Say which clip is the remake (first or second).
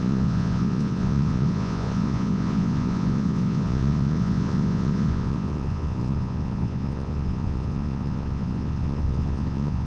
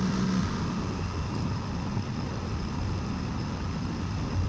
first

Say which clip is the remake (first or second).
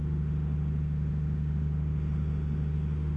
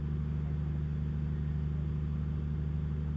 first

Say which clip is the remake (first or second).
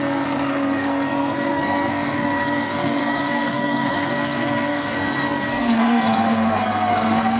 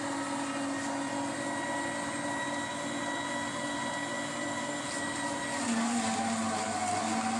first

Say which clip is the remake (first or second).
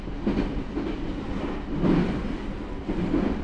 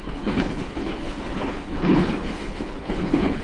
second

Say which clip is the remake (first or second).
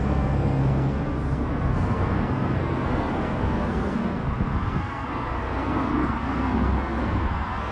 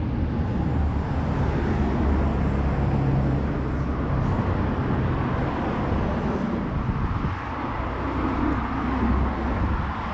first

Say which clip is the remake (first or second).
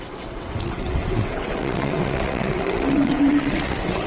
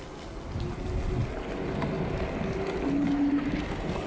first